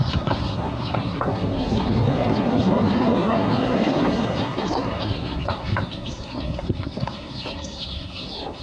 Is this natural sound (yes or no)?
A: no